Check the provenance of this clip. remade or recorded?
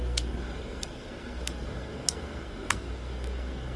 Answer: remade